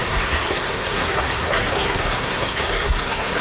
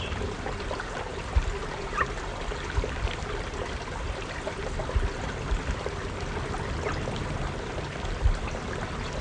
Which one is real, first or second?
second